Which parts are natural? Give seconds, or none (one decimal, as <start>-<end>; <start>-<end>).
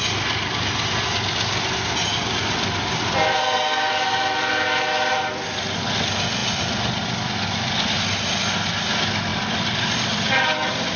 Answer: 0.0-3.4; 3.9-11.0